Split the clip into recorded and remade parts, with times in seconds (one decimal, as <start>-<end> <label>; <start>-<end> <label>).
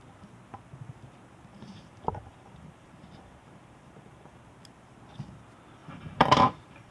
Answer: 0.0-1.5 recorded; 1.5-4.4 remade; 4.4-5.8 recorded; 5.8-6.9 remade